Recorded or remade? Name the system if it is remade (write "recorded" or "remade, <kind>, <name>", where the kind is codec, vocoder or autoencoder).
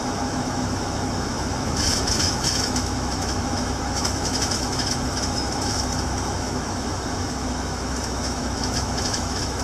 remade, autoencoder, DAC-VAE